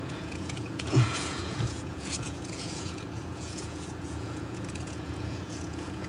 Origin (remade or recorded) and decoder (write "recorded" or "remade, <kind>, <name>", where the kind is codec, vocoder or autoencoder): remade, vocoder, Vocos